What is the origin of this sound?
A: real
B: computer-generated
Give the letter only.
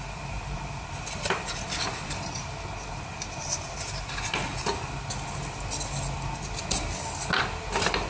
A